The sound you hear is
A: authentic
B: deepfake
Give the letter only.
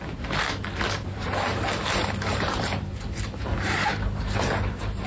B